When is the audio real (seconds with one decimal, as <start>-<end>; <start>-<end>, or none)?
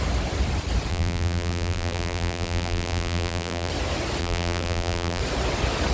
0.0-0.9; 3.7-4.2; 5.2-5.9